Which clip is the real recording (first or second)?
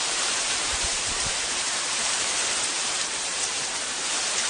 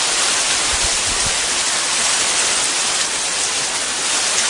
second